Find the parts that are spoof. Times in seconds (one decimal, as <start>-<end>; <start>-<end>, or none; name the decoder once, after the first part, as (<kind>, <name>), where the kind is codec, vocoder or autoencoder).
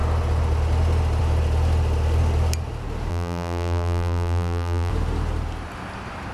3.1-4.9 (vocoder, BigVGAN v2)